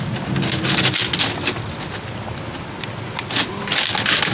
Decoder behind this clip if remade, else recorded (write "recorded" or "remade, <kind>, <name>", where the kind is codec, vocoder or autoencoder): recorded